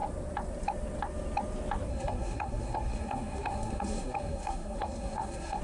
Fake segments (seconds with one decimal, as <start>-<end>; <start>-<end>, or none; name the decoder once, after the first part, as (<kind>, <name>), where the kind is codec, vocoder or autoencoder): 1.9-5.6 (codec, SNAC)